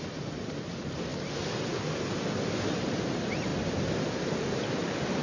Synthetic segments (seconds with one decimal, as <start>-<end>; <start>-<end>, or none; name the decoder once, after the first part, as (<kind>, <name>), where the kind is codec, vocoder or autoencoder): 0.0-1.1 (vocoder, BigVGAN v2); 2.6-3.5; 4.4-5.2